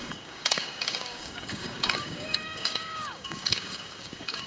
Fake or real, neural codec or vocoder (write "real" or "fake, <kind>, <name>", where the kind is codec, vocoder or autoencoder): fake, codec, DAC